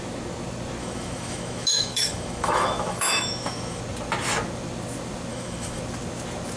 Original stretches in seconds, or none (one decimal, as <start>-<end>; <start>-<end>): 0.0-0.8; 3.8-5.3; 5.8-6.6